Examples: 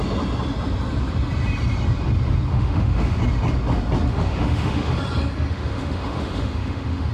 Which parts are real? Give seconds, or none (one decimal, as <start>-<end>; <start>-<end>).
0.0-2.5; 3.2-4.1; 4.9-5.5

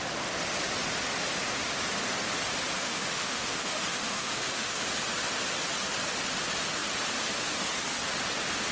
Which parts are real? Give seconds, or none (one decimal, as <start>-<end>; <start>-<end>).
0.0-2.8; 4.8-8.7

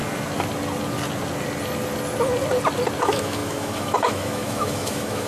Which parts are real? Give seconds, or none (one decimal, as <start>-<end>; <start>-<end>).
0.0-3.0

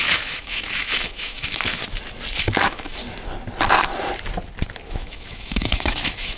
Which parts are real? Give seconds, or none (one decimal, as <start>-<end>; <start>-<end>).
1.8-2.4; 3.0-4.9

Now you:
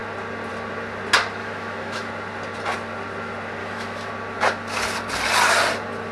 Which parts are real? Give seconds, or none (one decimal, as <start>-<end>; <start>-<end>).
0.0-1.4; 2.1-3.6; 4.1-6.1